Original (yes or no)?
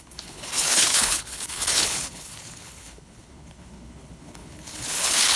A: no